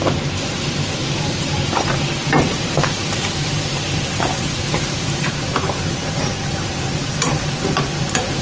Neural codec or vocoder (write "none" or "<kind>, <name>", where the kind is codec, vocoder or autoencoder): vocoder, BigVGAN v2